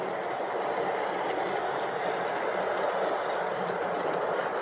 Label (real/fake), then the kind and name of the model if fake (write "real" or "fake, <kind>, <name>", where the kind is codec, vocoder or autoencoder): real